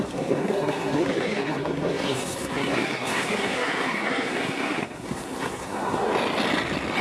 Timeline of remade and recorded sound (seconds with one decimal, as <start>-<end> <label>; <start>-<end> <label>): 0.0-6.1 remade; 6.1-7.0 recorded